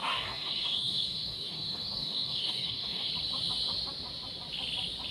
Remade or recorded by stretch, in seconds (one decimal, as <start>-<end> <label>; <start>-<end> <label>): 0.0-3.1 remade; 3.1-5.1 recorded